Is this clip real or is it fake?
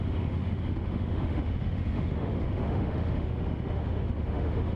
fake